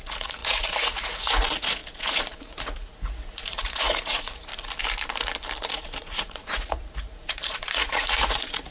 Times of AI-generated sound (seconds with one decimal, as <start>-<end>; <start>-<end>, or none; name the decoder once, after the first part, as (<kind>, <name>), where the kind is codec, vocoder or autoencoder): 0.0-4.5 (vocoder, Vocos); 5.7-8.7